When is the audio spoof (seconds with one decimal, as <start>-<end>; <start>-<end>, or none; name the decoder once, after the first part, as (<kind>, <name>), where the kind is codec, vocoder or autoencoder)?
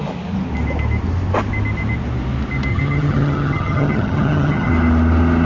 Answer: 2.7-4.7 (vocoder, HiFi-GAN)